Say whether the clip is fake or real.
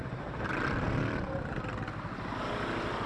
fake